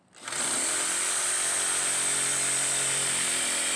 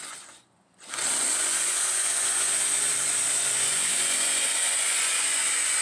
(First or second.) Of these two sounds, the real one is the first